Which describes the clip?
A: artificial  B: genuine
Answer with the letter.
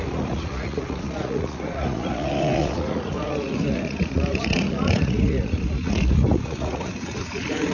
A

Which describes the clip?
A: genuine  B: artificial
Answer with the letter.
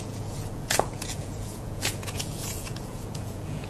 B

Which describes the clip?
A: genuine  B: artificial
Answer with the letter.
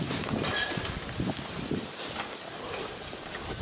A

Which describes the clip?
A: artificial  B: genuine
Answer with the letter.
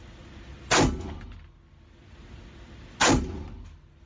B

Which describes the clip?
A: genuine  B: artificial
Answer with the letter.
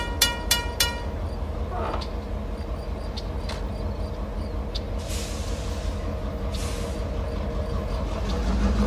A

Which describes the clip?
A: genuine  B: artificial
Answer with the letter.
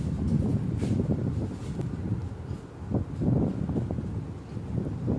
A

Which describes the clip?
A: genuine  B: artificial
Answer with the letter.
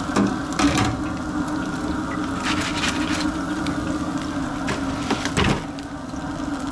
A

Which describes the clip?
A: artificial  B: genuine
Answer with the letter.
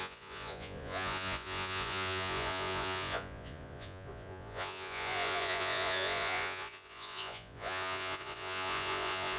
A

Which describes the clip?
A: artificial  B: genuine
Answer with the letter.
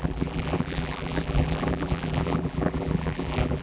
A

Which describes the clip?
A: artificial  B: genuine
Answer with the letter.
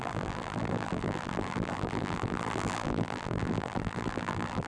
A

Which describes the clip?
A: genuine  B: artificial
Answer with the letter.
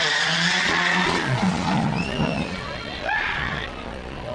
B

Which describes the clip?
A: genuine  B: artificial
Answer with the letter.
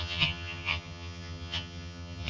B